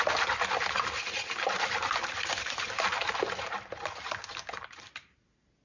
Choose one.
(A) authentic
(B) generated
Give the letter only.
A